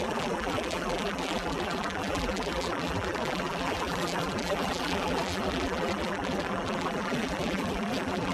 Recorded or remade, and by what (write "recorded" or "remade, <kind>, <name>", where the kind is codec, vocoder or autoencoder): remade, vocoder, BigVGAN v2